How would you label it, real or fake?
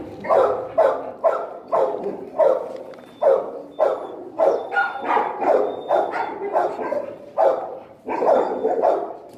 real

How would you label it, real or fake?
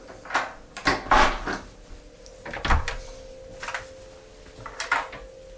real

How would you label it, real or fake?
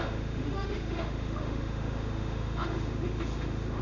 fake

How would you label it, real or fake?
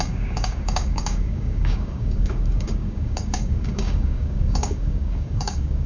fake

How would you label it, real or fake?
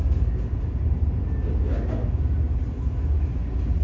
real